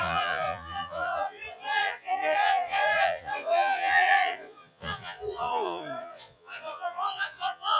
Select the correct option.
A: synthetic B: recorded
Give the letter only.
A